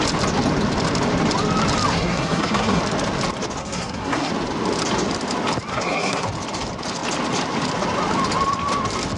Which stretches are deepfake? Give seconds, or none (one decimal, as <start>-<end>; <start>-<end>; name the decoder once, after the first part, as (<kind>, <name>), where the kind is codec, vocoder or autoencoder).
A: 1.9-2.8 (codec, SNAC); 3.6-4.3; 5.7-6.3